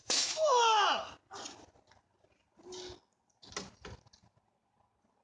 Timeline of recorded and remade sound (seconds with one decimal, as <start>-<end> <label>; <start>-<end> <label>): 0.0-0.6 remade; 0.6-5.2 recorded